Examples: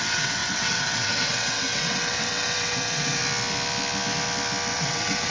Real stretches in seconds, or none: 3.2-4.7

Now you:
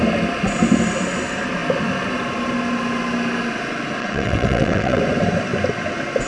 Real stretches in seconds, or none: 0.0-4.0; 5.0-6.3

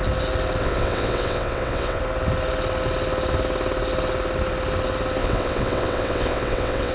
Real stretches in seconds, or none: 0.0-0.6; 2.0-5.2